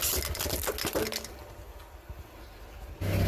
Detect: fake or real real